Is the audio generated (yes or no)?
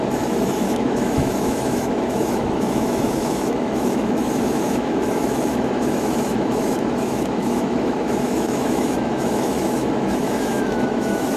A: yes